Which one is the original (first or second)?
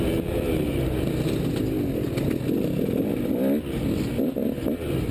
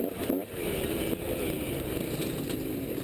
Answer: first